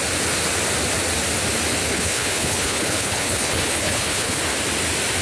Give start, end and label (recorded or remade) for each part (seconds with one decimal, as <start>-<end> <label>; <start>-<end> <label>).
0.0-1.9 recorded; 1.9-4.4 remade; 4.4-5.2 recorded